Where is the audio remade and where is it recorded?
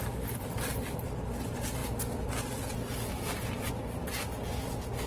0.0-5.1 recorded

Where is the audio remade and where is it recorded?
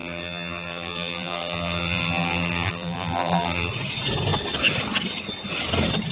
0.0-3.7 remade; 3.7-6.1 recorded